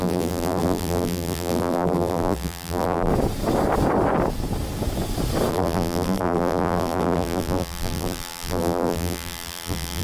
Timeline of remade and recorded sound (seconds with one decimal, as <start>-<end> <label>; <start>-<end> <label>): 0.0-3.1 remade; 3.1-5.5 recorded; 5.5-10.0 remade